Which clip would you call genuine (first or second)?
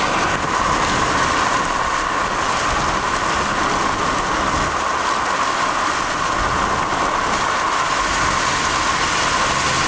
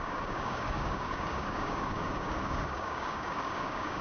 first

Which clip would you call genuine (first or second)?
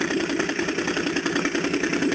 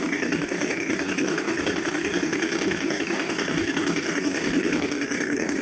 first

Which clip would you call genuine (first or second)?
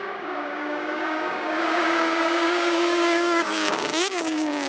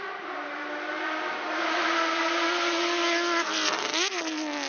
second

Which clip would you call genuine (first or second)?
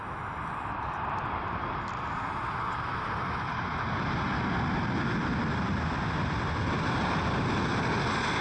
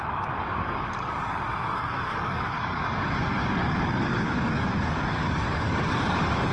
first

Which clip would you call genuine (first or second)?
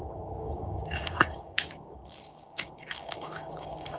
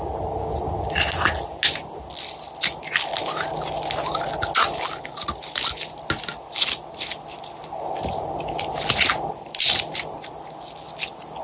second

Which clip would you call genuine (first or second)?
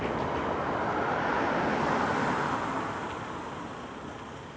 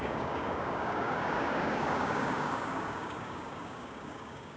first